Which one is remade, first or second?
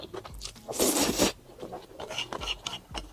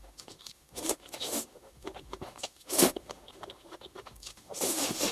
second